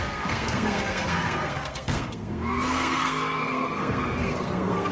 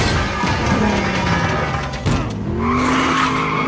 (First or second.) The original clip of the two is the second